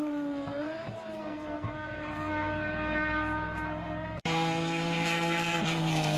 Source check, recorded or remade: remade